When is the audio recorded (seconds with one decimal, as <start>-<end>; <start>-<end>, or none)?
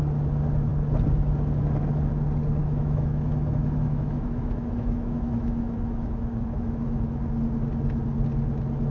0.0-2.6; 7.2-8.9